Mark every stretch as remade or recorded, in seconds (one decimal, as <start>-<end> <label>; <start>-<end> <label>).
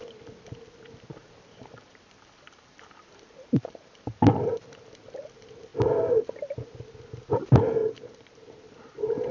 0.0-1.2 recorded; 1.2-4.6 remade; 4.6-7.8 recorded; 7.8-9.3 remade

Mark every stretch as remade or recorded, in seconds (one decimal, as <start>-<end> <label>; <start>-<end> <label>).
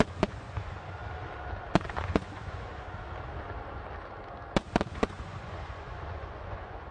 0.0-1.0 remade; 1.0-1.7 recorded; 1.7-2.7 remade; 2.7-4.9 recorded; 4.9-6.9 remade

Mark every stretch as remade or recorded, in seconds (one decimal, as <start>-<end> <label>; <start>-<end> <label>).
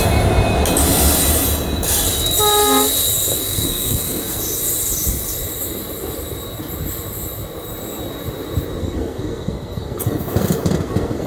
0.0-3.3 recorded; 3.3-4.4 remade; 4.4-8.8 recorded; 8.8-11.3 remade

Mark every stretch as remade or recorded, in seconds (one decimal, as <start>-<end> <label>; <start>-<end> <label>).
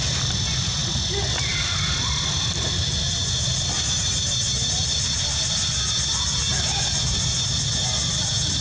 0.0-8.6 recorded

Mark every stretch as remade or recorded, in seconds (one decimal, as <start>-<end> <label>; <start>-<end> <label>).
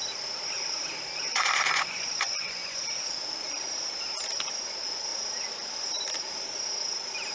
0.0-1.3 recorded; 1.3-2.8 remade; 2.8-7.3 recorded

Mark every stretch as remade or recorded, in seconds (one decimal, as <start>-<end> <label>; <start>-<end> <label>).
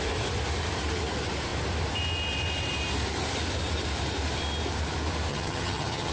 0.0-5.3 recorded; 5.3-6.1 remade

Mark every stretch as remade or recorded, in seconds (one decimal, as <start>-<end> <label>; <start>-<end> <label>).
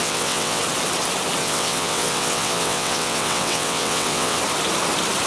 0.0-0.6 remade; 0.6-1.4 recorded; 1.4-4.4 remade; 4.4-5.3 recorded